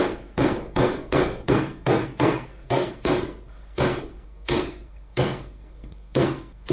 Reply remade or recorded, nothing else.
remade